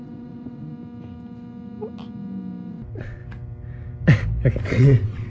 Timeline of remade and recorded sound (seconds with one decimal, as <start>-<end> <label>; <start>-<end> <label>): 0.0-0.7 remade; 0.7-2.7 recorded; 2.7-3.2 remade; 3.2-4.6 recorded; 4.6-5.3 remade